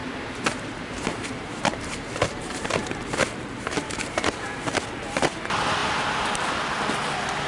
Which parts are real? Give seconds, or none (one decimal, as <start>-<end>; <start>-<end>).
4.5-7.5